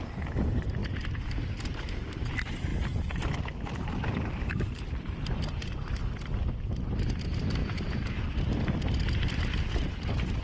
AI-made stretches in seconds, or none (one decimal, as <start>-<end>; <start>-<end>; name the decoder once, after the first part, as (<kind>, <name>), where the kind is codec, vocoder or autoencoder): 0.8-1.5 (vocoder, BigVGAN v2); 2.7-6.0; 7.6-10.4